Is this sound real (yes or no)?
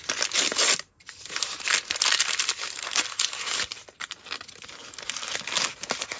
yes